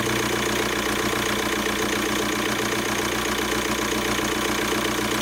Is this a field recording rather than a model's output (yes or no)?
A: yes